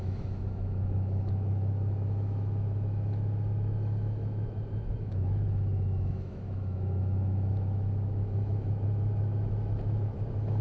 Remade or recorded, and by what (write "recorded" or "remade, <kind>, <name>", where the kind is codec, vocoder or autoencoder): remade, autoencoder, DAC-VAE